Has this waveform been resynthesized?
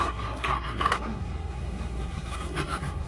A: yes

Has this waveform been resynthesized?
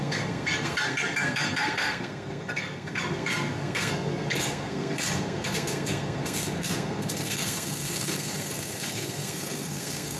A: yes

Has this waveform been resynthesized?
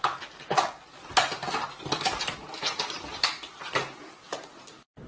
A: no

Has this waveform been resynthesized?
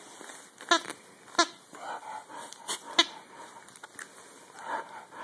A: no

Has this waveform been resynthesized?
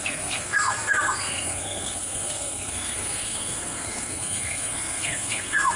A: yes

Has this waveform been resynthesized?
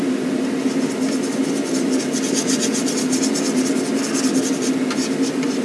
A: no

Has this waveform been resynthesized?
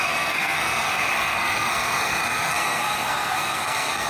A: yes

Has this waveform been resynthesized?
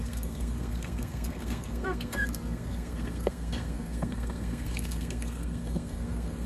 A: yes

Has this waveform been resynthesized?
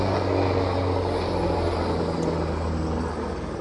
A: no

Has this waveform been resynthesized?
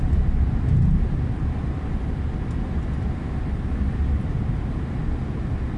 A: no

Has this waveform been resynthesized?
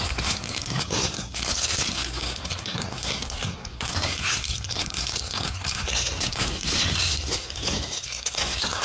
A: yes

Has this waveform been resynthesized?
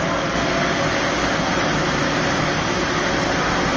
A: no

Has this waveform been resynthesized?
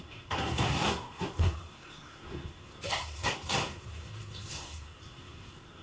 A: yes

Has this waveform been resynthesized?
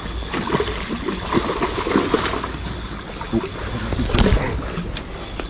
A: no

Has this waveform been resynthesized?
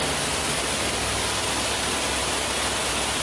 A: no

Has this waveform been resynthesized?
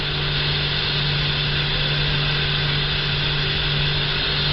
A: no